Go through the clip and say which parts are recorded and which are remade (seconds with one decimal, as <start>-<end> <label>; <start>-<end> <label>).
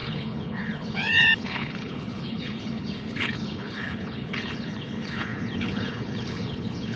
0.0-7.0 remade